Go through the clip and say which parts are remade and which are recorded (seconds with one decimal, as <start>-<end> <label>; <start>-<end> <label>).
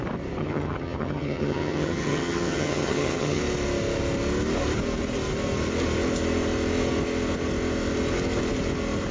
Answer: 0.0-0.4 recorded; 0.4-3.4 remade; 3.4-9.1 recorded